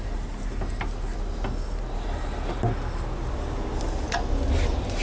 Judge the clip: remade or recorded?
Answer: recorded